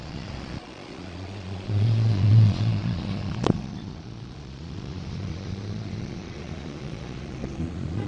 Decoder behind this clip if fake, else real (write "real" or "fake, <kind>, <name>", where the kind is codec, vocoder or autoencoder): fake, vocoder, Vocos